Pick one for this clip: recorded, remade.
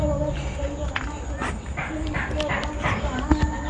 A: recorded